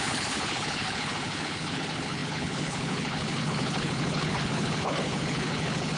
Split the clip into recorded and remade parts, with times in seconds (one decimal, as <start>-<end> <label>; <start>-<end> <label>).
0.0-6.0 remade